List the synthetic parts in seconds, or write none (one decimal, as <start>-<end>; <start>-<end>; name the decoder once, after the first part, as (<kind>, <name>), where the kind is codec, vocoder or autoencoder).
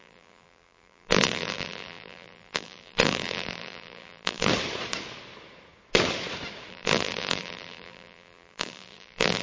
0.0-4.5 (vocoder, BigVGAN v2); 6.7-9.4